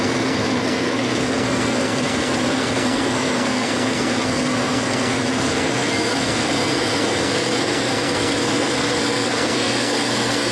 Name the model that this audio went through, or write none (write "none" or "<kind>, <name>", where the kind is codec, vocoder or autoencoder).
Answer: codec, SNAC